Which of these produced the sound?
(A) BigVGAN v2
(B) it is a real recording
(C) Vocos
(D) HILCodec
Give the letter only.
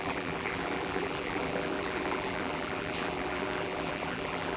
A